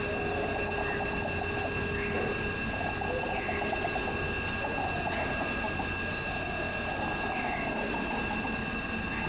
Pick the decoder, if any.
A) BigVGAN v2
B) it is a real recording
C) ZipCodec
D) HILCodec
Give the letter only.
B